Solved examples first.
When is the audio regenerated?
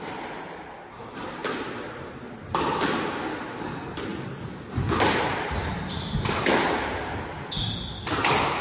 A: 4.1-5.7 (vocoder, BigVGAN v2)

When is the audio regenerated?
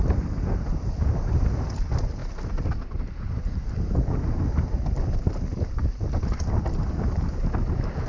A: none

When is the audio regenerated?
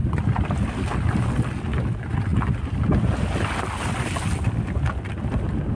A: none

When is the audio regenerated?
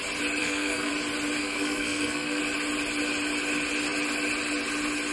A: 0.4-0.9 (codec, SNAC); 1.4-2.4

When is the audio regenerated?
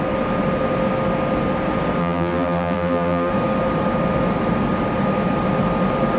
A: 2.0-3.3 (vocoder, BigVGAN v2)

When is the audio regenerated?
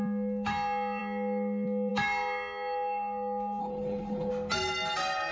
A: 3.6-4.3 (codec, HILCodec)